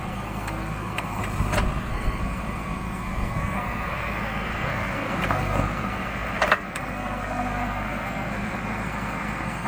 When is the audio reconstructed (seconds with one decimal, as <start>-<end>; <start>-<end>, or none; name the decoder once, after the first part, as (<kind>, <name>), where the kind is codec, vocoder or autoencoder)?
0.0-1.2 (codec, SNAC); 1.8-9.7

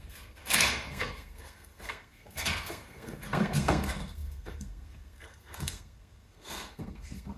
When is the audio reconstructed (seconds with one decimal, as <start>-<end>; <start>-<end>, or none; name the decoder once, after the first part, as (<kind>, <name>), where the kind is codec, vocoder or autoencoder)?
0.0-7.4 (codec, SNAC)

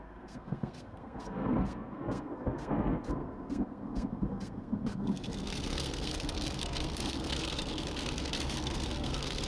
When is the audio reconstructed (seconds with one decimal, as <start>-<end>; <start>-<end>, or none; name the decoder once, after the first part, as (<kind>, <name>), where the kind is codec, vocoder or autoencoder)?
0.0-9.5 (codec, SNAC)

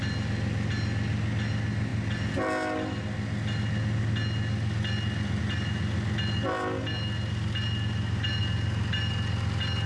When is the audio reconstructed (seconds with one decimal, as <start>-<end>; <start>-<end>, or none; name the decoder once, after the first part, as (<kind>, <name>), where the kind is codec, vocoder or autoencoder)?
none

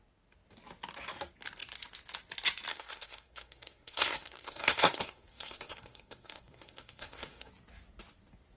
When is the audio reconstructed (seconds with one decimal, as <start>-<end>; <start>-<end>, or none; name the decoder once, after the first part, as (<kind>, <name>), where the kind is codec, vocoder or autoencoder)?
2.7-7.5 (codec, SNAC)

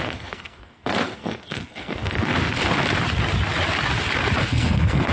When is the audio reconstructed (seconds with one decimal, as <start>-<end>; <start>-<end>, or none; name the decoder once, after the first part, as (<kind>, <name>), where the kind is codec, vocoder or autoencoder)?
0.0-2.3 (codec, SNAC); 4.4-5.1

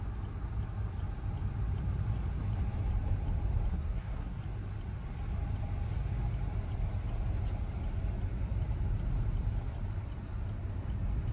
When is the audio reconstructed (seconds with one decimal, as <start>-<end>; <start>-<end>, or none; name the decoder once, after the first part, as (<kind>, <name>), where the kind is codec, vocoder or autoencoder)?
3.7-4.4 (codec, SNAC)